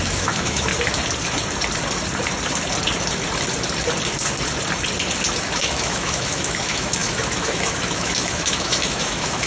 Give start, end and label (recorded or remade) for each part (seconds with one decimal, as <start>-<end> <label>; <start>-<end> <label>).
0.0-0.7 remade; 0.7-5.4 recorded; 5.4-9.5 remade